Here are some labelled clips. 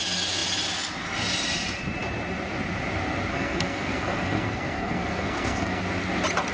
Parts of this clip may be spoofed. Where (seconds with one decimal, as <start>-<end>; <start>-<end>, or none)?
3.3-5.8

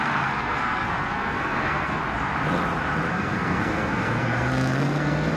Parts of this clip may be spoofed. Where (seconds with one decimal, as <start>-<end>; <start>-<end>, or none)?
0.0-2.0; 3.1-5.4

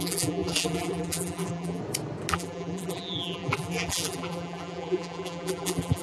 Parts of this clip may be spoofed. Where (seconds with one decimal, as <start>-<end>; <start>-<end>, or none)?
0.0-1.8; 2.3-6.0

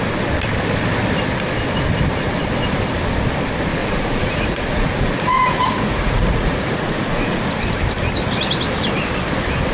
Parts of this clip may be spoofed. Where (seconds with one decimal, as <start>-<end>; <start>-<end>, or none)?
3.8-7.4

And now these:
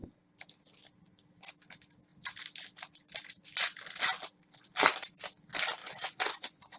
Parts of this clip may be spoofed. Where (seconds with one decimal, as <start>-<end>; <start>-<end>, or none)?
5.8-6.8

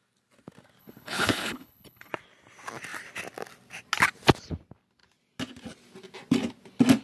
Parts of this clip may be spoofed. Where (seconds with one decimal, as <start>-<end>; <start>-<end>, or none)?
0.8-2.1